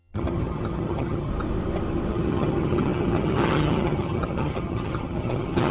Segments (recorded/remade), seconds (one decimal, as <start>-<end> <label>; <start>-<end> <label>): 0.0-1.3 remade; 1.3-2.1 recorded; 2.1-5.7 remade